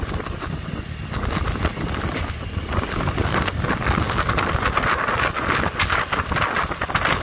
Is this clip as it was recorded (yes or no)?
yes